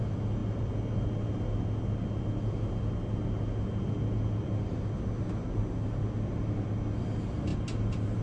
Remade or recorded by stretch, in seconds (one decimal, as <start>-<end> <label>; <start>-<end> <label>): 0.0-8.2 recorded